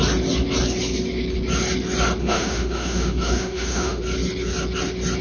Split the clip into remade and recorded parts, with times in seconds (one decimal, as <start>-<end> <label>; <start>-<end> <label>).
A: 0.0-2.2 recorded; 2.2-4.0 remade; 4.0-5.2 recorded